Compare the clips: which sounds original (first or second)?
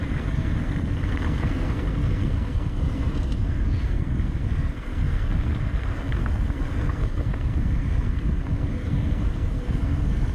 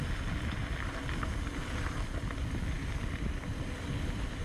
second